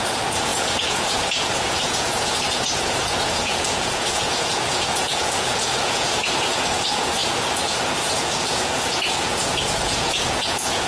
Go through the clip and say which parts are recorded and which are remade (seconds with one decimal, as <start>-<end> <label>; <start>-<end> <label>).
0.0-10.9 remade